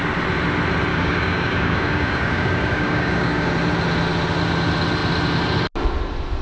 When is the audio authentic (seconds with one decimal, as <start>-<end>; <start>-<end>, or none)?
0.0-0.9; 3.5-6.4